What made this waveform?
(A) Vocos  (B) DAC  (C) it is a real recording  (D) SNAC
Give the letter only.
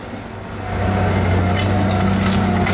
C